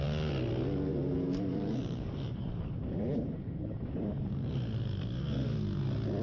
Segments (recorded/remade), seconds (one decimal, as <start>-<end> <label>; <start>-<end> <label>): 0.0-0.9 recorded; 0.9-4.6 remade; 4.6-6.2 recorded